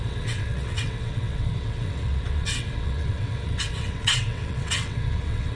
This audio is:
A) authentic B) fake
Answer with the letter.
B